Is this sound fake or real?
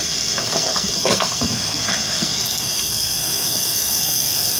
fake